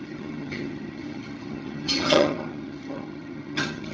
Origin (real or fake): fake